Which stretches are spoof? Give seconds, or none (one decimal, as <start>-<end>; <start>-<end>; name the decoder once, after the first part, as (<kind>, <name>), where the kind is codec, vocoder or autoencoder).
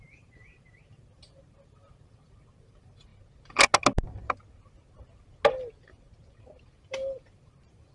0.0-3.1 (vocoder, BigVGAN v2); 6.7-7.9